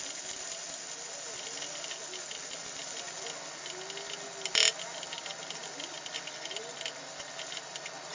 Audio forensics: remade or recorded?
recorded